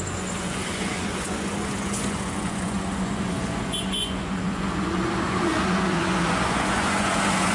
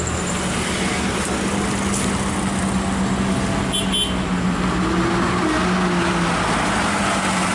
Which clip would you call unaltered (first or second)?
second